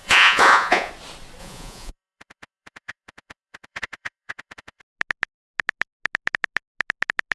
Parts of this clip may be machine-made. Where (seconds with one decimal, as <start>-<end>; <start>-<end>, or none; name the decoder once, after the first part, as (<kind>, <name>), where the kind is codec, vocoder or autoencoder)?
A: 0.0-0.9 (vocoder, Vocos); 1.4-4.8